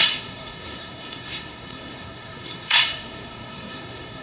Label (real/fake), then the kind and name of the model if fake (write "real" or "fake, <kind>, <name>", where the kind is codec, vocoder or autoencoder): fake, codec, SNAC